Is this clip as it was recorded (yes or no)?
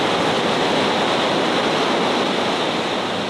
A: yes